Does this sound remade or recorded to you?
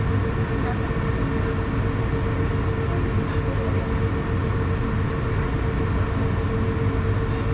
recorded